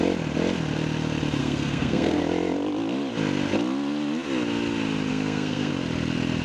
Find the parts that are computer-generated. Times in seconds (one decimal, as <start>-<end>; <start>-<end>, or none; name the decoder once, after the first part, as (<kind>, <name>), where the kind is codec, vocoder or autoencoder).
1.4-2.2 (codec, SNAC); 5.1-5.7